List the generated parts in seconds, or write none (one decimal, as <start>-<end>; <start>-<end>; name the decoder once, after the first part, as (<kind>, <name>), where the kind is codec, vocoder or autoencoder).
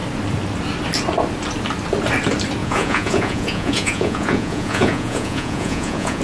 2.6-6.2 (vocoder, Vocos)